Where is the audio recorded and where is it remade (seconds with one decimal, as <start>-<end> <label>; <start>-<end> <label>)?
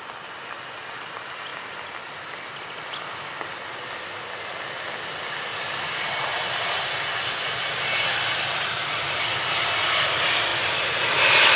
0.0-11.6 recorded